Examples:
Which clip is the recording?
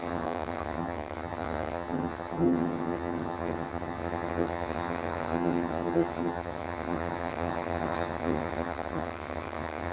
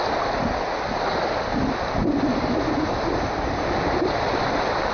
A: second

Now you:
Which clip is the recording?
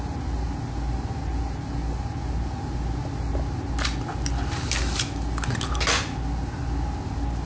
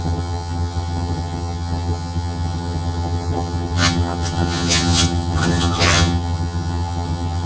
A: first